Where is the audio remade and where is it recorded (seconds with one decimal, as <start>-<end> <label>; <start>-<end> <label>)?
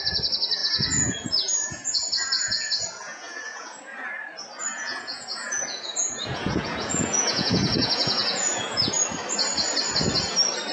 0.0-0.6 recorded; 0.6-4.1 remade; 4.1-4.7 recorded; 4.7-8.9 remade; 8.9-10.7 recorded